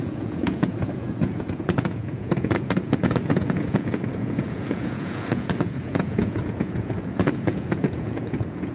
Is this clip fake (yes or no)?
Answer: yes